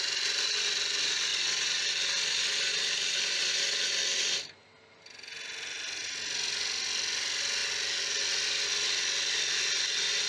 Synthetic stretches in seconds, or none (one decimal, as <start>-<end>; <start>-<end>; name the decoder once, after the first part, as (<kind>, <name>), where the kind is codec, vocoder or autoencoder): none